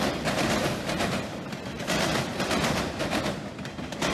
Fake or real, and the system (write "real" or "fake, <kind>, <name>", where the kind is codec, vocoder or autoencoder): fake, vocoder, BigVGAN v2